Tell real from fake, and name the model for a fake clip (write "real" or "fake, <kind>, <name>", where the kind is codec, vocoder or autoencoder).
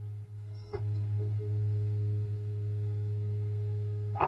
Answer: fake, codec, SNAC